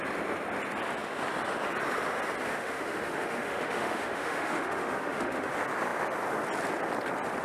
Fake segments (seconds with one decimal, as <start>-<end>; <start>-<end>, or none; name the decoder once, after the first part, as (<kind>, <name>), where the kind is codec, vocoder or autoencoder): 2.5-5.5 (autoencoder, DAC-VAE)

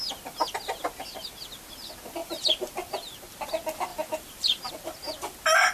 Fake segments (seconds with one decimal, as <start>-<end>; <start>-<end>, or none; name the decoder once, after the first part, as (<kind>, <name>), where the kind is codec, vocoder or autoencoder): 2.2-2.7 (vocoder, BigVGAN v2); 3.9-4.7

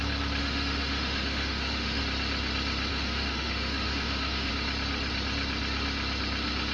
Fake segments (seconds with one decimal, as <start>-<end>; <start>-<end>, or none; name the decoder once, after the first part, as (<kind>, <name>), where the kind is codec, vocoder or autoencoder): 0.4-2.0 (autoencoder, DAC-VAE); 2.9-4.5

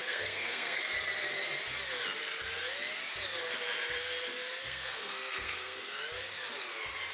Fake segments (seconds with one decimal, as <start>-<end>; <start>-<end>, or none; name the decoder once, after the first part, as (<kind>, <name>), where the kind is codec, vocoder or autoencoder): 0.0-0.8 (codec, SNAC); 4.6-6.0

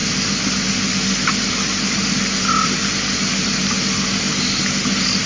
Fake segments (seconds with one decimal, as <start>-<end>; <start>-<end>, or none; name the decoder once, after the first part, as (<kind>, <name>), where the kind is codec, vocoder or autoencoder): none

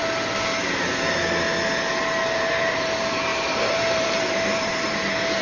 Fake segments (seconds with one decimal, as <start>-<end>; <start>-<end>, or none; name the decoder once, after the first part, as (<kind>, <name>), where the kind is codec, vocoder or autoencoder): 2.5-5.4 (vocoder, BigVGAN v2)